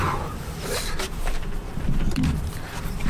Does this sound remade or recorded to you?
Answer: remade